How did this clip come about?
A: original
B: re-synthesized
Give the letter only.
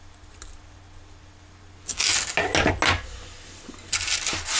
A